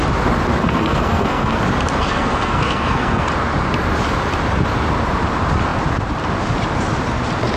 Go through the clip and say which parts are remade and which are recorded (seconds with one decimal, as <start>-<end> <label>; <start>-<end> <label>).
0.0-0.6 recorded; 0.6-1.6 remade; 1.6-2.0 recorded; 2.0-3.3 remade; 3.3-7.6 recorded